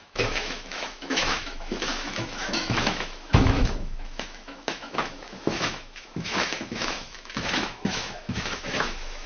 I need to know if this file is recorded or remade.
remade